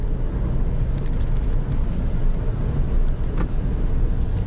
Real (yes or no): yes